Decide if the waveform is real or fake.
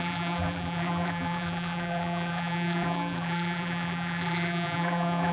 fake